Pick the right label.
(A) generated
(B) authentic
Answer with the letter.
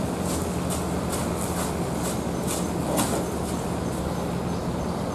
B